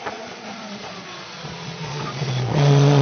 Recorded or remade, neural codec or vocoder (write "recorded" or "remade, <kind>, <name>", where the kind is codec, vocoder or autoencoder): remade, vocoder, Vocos